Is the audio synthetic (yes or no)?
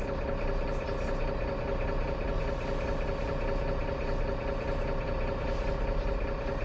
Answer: no